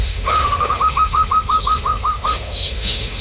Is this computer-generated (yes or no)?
yes